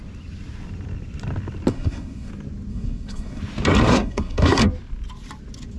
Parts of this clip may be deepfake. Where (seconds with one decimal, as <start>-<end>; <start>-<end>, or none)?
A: 1.7-2.3; 2.7-3.4; 3.9-4.6